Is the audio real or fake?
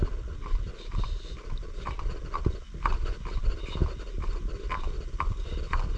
real